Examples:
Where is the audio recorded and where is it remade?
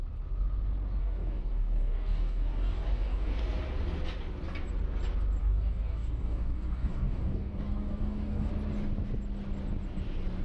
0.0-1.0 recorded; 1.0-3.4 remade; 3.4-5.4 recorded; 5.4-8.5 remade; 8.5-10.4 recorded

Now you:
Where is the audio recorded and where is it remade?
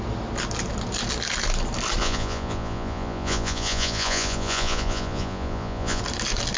0.0-2.0 recorded; 2.0-6.0 remade; 6.0-6.6 recorded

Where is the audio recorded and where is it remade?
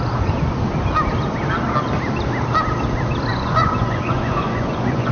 0.0-3.3 recorded; 3.3-5.1 remade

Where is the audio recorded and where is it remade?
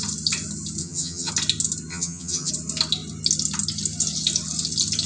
0.0-0.8 recorded; 0.8-1.3 remade; 1.3-1.9 recorded; 1.9-2.5 remade; 2.5-5.1 recorded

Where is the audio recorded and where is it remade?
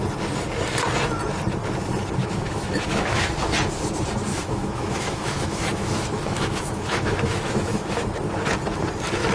0.0-2.2 recorded; 2.2-3.2 remade; 3.2-4.3 recorded; 4.3-7.9 remade; 7.9-9.3 recorded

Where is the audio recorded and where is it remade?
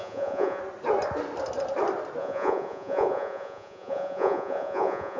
0.0-0.6 remade; 0.6-2.2 recorded; 2.2-5.2 remade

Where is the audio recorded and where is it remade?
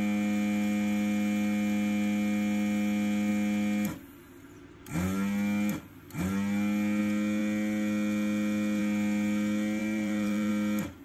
0.0-9.8 recorded; 9.8-10.5 remade; 10.5-11.0 recorded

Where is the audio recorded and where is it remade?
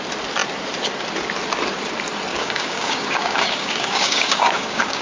0.0-2.3 recorded; 2.3-5.0 remade